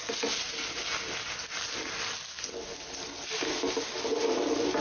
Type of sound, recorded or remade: recorded